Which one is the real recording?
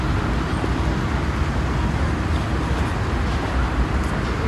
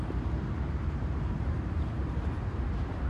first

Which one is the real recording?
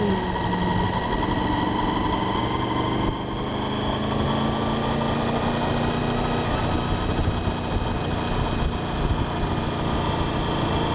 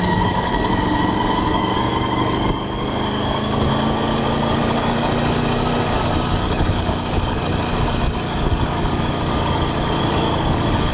first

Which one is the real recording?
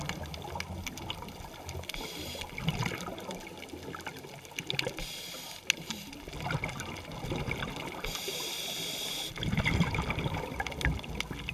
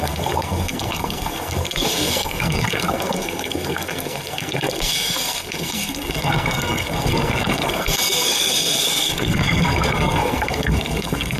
first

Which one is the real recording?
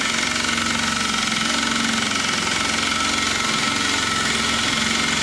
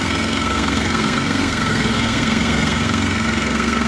first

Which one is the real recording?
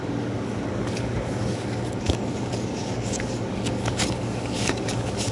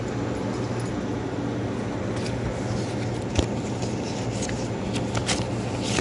second